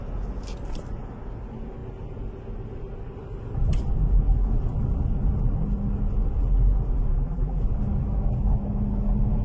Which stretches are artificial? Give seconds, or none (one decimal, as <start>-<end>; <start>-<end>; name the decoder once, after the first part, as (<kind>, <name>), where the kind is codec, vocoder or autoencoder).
7.1-7.6 (vocoder, BigVGAN v2)